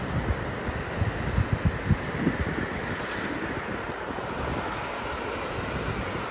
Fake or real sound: real